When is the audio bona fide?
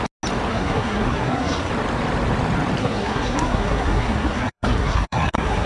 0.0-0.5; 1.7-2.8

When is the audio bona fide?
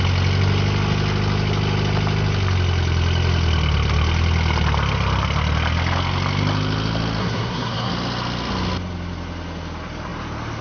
0.0-7.2; 7.9-10.6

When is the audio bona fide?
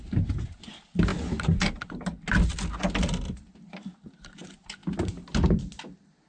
0.0-6.3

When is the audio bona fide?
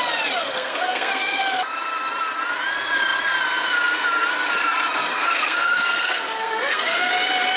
0.0-0.4; 1.4-5.1; 7.1-7.6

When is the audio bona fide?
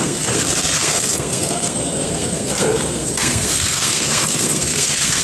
none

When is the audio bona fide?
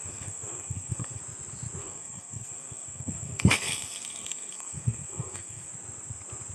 1.2-1.8; 5.7-6.5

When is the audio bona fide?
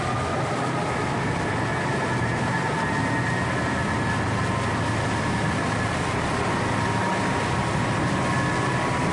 0.0-9.1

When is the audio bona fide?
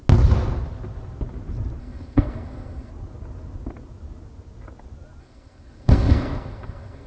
0.0-1.8; 2.9-5.2